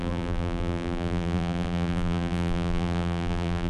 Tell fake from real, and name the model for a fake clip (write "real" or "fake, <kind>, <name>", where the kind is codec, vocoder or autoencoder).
fake, vocoder, BigVGAN v2